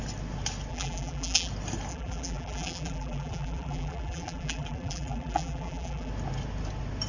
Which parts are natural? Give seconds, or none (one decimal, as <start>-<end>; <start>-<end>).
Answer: 0.0-0.7; 1.5-1.9; 6.1-7.1